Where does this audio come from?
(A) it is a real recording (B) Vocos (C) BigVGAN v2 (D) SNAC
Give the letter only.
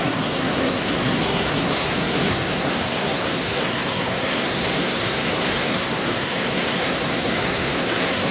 D